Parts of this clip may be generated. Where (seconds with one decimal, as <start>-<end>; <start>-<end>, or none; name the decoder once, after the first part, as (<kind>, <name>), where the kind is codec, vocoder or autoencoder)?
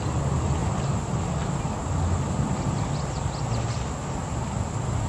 none